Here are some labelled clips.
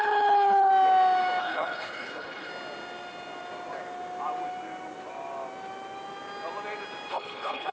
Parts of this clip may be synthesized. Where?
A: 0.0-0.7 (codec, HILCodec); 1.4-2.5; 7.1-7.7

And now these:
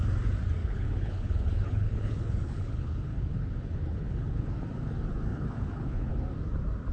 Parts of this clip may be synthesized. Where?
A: 0.6-4.5 (codec, HILCodec); 5.3-6.1

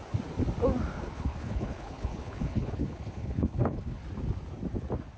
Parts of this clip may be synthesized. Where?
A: 0.9-4.0 (codec, HILCodec)